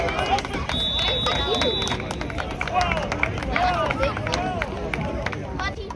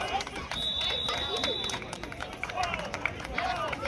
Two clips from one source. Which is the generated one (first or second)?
second